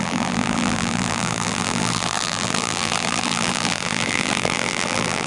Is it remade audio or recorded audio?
remade